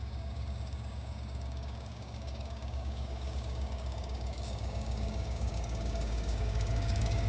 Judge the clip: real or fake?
fake